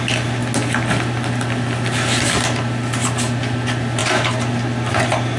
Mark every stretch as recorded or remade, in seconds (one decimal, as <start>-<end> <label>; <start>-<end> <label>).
0.0-5.4 recorded